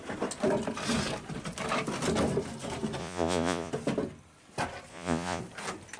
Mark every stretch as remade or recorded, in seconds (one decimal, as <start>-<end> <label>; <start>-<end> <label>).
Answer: 0.0-3.0 recorded; 3.0-3.7 remade; 3.7-4.9 recorded; 4.9-5.4 remade; 5.4-6.0 recorded